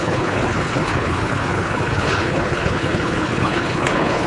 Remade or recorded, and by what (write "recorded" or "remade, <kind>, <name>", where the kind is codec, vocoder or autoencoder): remade, codec, HILCodec